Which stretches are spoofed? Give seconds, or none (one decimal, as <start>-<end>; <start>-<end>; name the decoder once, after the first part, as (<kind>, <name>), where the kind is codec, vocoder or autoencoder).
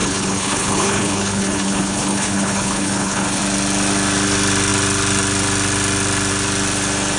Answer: 0.0-3.4 (codec, HILCodec)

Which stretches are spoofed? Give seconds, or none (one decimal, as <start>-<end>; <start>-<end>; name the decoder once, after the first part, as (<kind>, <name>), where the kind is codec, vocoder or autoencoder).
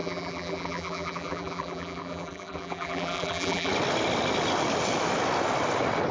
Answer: 0.0-3.7 (vocoder, BigVGAN v2)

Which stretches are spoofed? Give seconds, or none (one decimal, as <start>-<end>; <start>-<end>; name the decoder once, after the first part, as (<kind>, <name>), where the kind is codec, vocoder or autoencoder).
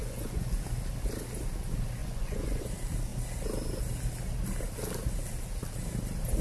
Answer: 0.0-0.6 (vocoder, Vocos); 2.0-2.6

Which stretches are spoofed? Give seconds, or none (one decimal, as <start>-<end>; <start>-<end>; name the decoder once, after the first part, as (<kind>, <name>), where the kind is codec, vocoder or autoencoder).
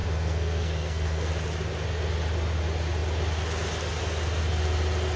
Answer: 0.0-1.3 (codec, SNAC)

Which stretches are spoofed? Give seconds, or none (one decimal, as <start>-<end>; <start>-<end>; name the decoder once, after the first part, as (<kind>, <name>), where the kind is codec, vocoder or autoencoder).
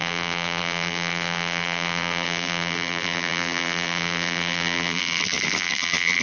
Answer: 0.0-6.2 (vocoder, BigVGAN v2)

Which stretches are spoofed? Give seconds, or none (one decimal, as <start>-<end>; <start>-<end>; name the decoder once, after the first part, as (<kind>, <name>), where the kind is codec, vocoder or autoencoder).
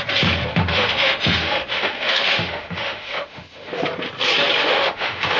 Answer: 0.6-3.8 (autoencoder, DAC-VAE); 4.6-5.4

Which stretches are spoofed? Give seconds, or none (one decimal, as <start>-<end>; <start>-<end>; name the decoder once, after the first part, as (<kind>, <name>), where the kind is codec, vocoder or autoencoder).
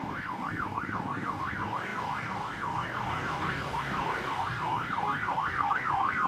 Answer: 0.0-6.3 (codec, DAC)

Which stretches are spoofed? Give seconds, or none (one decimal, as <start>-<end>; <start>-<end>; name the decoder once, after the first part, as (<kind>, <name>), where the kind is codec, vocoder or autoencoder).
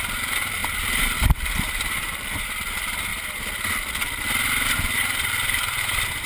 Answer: 0.0-3.1 (vocoder, BigVGAN v2); 3.9-6.3